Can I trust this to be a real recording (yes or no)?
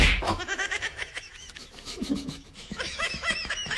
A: no